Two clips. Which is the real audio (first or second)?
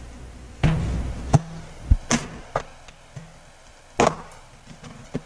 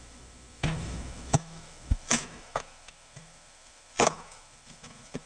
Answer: first